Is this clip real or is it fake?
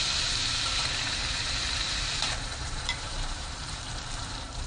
fake